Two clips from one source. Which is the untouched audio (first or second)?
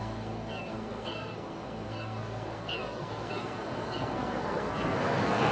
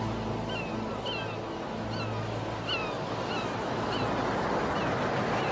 second